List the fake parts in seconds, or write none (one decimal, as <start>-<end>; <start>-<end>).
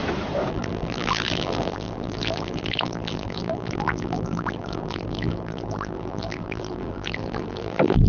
0.5-8.1